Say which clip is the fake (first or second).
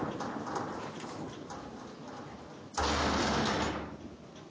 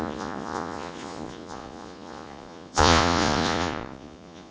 second